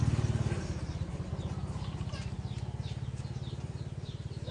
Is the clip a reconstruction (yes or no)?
no